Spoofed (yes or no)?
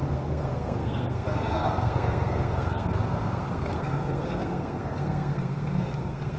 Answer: yes